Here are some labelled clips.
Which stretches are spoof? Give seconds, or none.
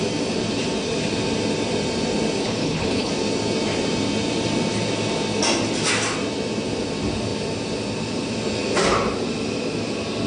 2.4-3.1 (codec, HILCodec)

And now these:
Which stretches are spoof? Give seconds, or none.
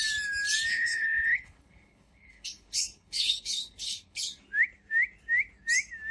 0.7-4.4 (codec, HILCodec)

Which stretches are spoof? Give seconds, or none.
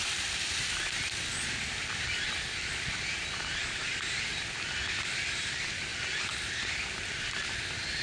none